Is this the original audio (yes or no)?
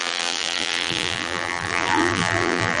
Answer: no